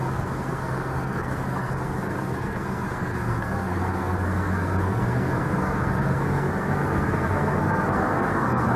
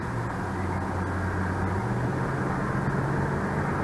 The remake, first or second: first